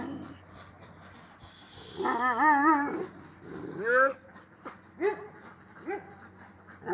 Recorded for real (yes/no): yes